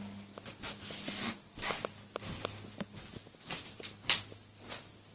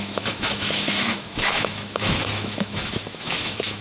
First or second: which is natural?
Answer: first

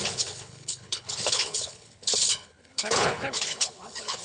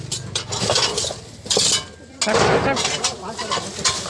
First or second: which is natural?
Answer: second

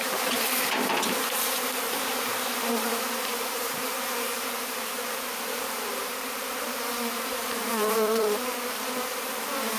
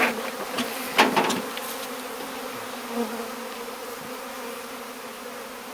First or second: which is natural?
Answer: second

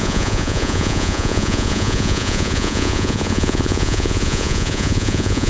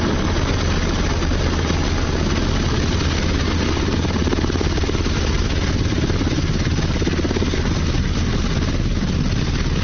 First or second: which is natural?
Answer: second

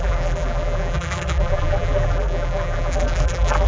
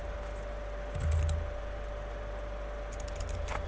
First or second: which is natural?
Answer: second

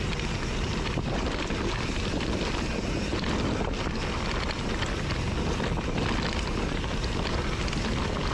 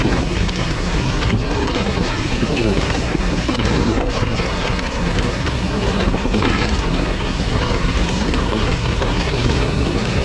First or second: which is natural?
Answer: first